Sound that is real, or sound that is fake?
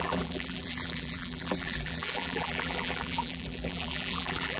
fake